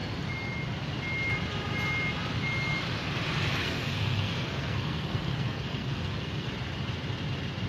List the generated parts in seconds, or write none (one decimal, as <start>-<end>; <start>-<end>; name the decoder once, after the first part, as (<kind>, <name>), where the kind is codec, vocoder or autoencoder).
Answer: 3.6-6.5 (codec, SNAC)